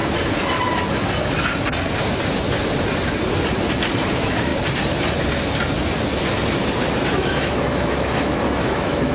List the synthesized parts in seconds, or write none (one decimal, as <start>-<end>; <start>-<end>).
4.1-4.5; 7.1-9.1